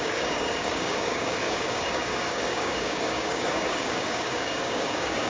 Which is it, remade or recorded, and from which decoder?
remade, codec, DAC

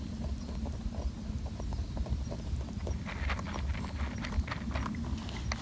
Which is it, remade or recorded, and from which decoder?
recorded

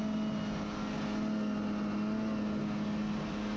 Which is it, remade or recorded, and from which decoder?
recorded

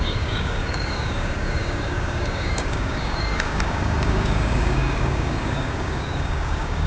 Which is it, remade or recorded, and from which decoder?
remade, codec, DAC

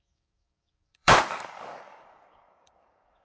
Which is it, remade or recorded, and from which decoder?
remade, codec, DAC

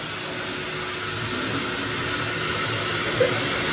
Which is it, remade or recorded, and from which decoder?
recorded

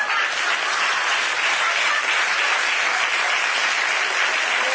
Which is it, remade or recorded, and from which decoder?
recorded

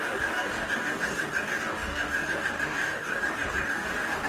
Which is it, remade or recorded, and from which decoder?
remade, codec, DAC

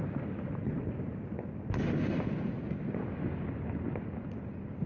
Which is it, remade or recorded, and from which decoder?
recorded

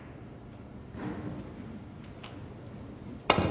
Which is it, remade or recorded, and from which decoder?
recorded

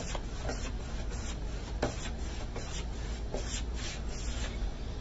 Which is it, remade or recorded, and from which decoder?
recorded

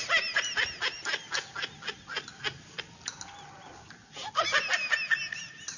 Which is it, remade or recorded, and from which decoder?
recorded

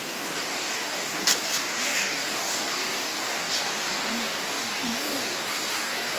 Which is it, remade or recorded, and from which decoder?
remade, codec, DAC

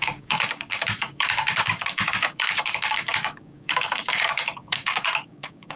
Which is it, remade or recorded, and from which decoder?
remade, codec, DAC